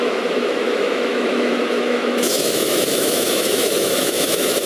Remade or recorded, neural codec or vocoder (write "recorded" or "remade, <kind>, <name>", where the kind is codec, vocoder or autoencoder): remade, autoencoder, DAC-VAE